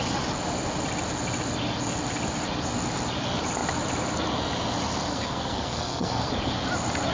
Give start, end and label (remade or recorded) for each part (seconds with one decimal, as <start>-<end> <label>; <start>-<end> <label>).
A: 0.0-5.1 recorded; 5.1-6.3 remade; 6.3-7.1 recorded